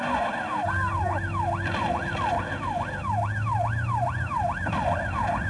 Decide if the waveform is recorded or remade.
recorded